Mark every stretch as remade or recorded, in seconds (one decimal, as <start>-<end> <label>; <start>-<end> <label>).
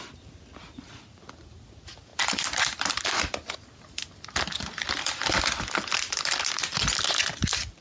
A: 0.0-7.8 recorded